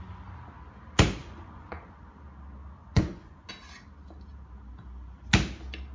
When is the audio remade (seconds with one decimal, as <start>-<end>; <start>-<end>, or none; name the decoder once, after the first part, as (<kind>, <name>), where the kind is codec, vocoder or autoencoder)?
1.2-2.1 (vocoder, Vocos); 2.8-3.5